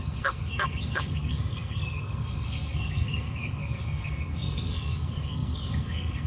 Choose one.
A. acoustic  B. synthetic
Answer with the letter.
B